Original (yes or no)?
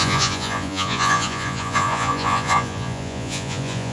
no